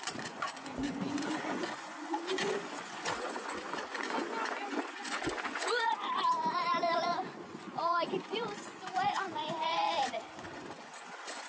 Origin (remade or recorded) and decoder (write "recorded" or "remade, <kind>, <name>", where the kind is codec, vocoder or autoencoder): remade, vocoder, Vocos